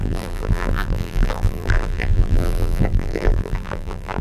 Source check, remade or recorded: remade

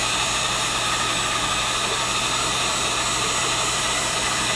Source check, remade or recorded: recorded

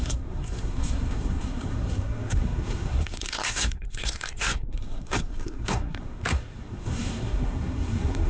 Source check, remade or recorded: remade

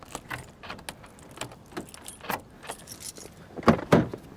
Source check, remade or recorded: recorded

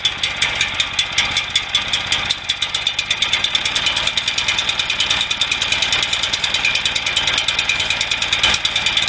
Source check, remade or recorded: recorded